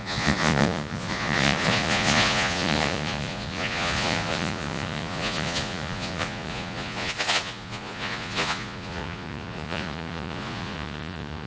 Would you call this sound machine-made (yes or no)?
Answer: yes